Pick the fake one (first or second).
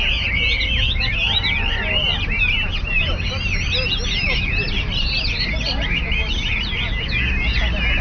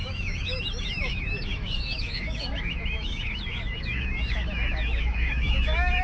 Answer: second